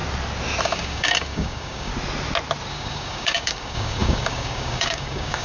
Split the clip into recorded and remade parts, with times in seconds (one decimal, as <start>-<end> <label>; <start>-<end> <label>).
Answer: 0.0-0.6 recorded; 0.6-1.9 remade; 1.9-2.7 recorded; 2.7-5.4 remade